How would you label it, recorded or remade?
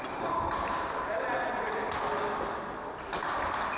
recorded